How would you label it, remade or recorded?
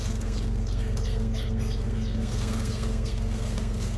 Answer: remade